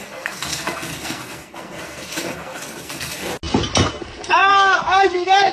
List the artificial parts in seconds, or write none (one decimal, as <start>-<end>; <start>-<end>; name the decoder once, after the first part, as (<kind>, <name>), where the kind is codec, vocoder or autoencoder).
0.0-3.3 (codec, SNAC); 3.9-5.5

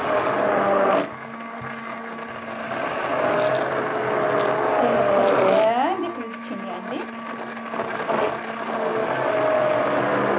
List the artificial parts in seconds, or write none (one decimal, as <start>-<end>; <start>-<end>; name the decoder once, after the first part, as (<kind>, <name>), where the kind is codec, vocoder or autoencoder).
none

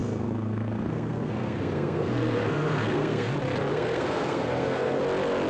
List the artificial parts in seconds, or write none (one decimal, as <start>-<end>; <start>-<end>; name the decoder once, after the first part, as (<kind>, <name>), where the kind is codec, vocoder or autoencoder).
0.0-3.3 (codec, SNAC); 3.7-5.0

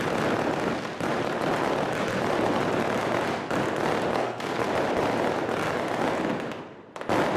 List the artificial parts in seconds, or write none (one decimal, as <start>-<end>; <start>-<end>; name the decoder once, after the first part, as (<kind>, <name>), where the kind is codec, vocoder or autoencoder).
4.1-4.7 (codec, SNAC)

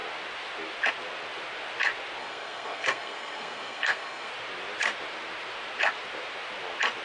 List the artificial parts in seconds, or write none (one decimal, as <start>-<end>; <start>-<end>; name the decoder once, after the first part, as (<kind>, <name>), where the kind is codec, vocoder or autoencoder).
2.2-4.3 (codec, SNAC)